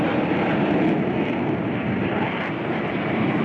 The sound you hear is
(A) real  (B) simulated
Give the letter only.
A